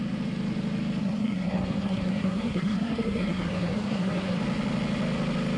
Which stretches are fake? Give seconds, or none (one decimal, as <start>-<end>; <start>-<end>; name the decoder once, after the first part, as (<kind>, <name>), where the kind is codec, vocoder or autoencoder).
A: 1.0-4.4 (codec, SNAC)

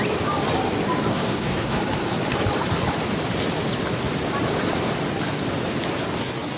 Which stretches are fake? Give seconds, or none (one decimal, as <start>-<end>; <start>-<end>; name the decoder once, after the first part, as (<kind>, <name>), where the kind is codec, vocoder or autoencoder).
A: 1.1-1.8 (codec, SNAC)

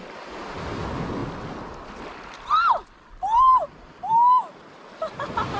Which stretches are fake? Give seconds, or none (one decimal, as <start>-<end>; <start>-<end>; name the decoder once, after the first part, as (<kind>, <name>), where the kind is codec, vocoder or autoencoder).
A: none

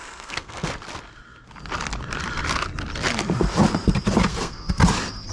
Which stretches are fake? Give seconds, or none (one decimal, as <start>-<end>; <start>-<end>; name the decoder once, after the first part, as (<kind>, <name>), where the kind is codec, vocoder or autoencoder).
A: 0.0-0.7 (codec, SNAC); 4.3-4.8

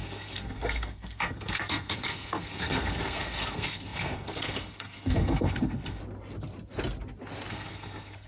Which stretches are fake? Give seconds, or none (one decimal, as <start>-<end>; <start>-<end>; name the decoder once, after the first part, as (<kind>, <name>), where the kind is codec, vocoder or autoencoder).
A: 0.0-6.0 (codec, SNAC); 7.5-8.3

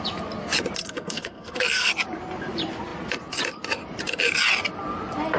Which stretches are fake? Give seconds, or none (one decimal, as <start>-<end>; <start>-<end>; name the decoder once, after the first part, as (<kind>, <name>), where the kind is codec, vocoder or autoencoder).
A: 0.8-1.9 (codec, SNAC)

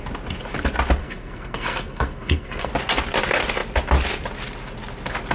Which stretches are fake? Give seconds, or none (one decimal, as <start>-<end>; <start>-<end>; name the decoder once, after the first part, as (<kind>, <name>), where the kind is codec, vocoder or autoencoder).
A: 1.0-2.7 (codec, SNAC)